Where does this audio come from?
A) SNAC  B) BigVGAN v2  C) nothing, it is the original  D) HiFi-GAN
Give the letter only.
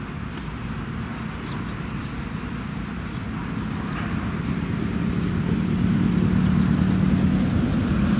C